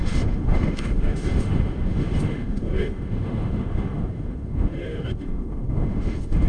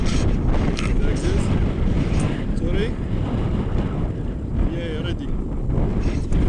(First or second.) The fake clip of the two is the first